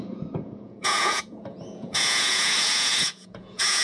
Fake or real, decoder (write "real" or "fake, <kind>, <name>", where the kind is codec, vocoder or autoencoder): fake, vocoder, Vocos